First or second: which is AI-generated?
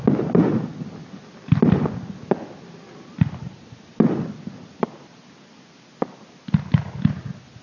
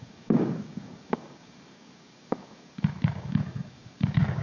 second